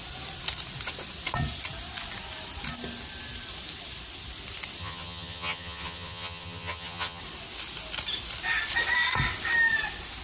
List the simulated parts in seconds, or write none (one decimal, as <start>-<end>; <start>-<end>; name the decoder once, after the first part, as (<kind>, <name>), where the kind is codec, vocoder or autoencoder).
4.8-7.2 (vocoder, HiFi-GAN)